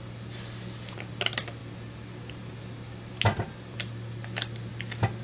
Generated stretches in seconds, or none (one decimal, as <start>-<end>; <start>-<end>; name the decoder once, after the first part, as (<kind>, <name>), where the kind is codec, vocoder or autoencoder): none